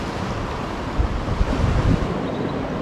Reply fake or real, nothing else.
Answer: real